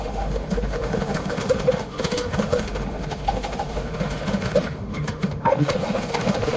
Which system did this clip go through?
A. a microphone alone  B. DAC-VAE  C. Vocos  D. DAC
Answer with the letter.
B